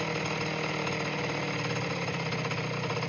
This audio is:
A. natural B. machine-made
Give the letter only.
A